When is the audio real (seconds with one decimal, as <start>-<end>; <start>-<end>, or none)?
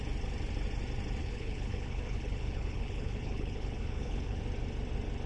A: 0.0-1.2; 4.4-5.3